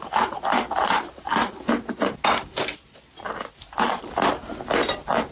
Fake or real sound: real